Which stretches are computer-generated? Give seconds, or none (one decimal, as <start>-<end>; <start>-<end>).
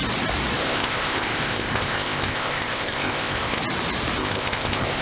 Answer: 0.6-3.6; 4.2-5.0